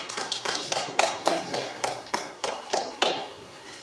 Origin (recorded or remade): remade